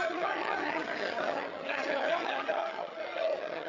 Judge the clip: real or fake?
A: fake